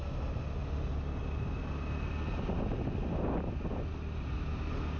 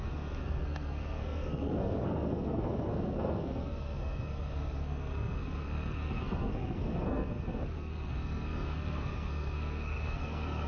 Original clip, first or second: first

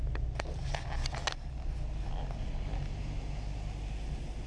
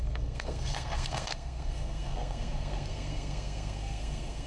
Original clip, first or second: first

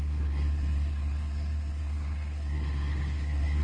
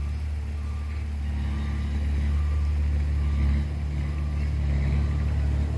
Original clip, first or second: second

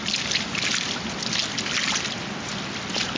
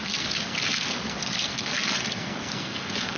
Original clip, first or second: first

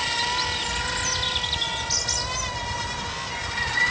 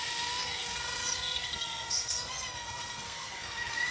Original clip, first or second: first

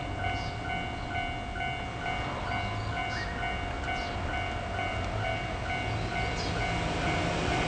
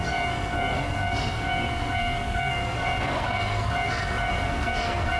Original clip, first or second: first